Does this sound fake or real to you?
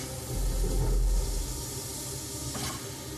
real